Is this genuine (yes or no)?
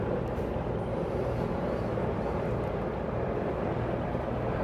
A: no